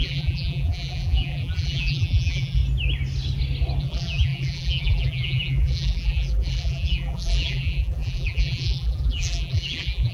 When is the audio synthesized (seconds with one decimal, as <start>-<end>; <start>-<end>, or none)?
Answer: 0.0-2.6; 3.8-10.1